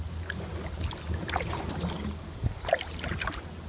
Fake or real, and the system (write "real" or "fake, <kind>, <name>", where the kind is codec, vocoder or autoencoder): real